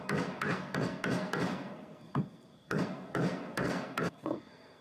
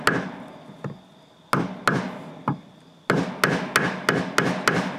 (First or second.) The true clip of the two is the second